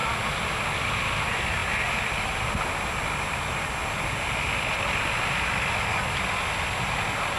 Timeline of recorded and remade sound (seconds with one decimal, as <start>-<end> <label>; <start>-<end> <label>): 0.0-7.4 recorded